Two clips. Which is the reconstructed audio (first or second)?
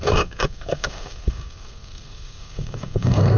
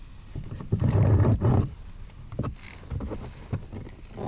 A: first